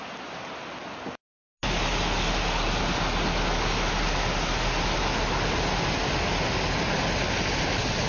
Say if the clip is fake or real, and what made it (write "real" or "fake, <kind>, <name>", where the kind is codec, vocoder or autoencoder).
real